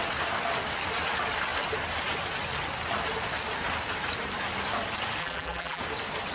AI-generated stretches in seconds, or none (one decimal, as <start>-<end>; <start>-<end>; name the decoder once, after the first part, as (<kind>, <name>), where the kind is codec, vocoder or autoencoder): 5.2-5.8 (vocoder, BigVGAN v2)

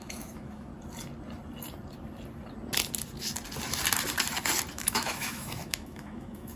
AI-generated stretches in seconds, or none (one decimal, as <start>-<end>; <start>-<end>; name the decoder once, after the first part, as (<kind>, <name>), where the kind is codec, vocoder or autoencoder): 0.0-0.7 (autoencoder, DAC-VAE); 4.7-6.6

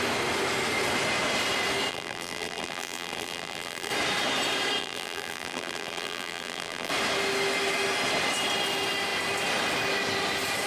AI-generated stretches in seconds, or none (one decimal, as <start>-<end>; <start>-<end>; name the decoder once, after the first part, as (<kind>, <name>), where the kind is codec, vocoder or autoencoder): 1.9-3.9 (vocoder, BigVGAN v2); 4.8-6.9

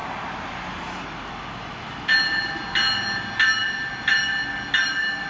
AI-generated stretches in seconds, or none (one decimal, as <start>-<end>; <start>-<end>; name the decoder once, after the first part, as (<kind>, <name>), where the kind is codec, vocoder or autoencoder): none

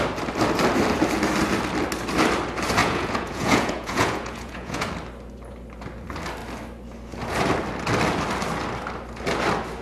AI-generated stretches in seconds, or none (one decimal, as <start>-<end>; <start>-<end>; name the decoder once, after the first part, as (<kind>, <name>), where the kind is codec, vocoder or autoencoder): 2.8-4.9 (vocoder, Vocos)

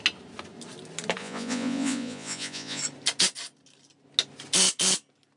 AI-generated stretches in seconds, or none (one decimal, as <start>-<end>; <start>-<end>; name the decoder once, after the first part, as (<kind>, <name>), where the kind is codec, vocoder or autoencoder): 1.2-2.8 (vocoder, Vocos)